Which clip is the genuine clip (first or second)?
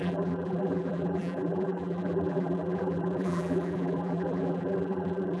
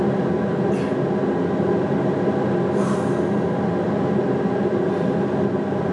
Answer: second